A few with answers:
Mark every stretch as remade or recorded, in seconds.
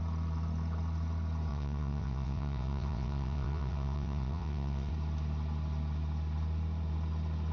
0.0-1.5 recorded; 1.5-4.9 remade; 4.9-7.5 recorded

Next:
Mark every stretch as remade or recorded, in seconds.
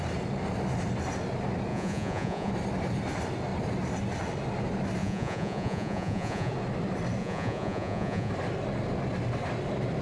0.0-1.7 recorded; 1.7-2.5 remade; 2.5-5.0 recorded; 5.0-6.5 remade; 6.5-7.2 recorded; 7.2-8.3 remade; 8.3-10.0 recorded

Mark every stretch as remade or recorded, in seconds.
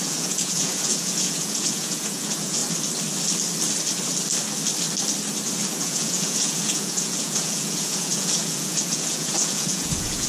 0.0-2.6 remade; 2.6-5.8 recorded; 5.8-10.3 remade